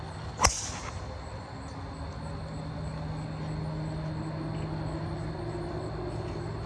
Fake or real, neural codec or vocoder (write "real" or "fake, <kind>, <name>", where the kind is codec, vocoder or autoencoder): real